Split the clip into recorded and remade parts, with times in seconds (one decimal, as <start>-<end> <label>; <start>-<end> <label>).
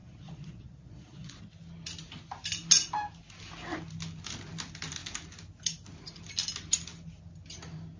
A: 0.0-1.4 remade; 1.4-8.0 recorded